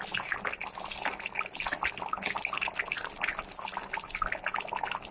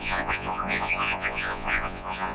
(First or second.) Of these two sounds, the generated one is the second